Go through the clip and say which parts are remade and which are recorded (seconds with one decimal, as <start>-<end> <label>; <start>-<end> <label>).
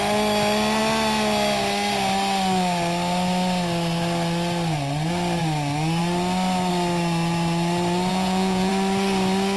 0.0-8.1 recorded; 8.1-8.7 remade; 8.7-9.6 recorded